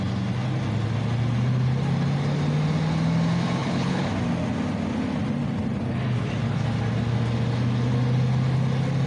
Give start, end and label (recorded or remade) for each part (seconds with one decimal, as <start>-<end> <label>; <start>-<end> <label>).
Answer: 0.0-3.6 recorded; 3.6-4.1 remade; 4.1-9.1 recorded